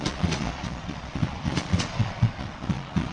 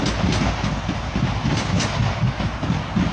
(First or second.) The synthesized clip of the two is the first